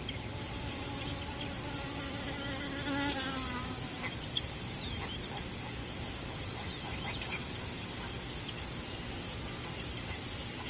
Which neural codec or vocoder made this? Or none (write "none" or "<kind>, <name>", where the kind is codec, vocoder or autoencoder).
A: none